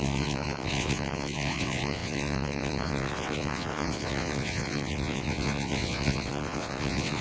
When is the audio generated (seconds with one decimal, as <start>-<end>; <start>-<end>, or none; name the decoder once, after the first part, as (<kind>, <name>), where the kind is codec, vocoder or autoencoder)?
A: 0.0-7.2 (vocoder, WaveNeXt)